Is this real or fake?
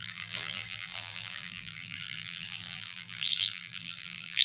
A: fake